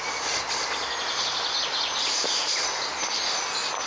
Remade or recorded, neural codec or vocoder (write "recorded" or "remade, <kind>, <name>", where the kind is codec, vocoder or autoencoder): recorded